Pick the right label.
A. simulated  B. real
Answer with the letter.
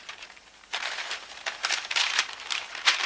A